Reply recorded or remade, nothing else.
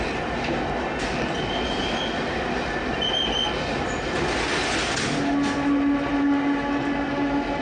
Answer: recorded